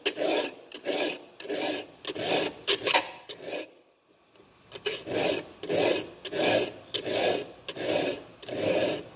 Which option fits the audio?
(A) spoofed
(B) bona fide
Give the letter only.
B